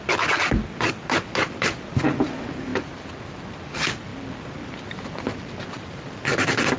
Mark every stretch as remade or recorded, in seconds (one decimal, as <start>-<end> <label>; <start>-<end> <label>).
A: 0.0-6.8 recorded